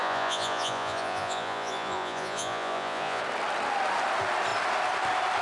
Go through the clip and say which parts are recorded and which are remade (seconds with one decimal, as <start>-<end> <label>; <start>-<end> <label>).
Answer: 0.0-3.2 remade; 3.2-5.4 recorded